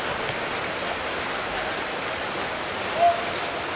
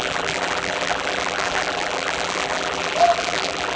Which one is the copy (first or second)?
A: second